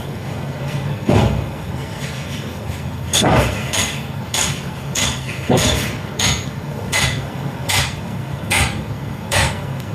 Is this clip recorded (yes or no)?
no